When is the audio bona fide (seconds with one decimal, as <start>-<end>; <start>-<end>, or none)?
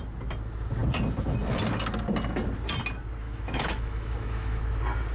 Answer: 0.0-3.2; 4.6-5.1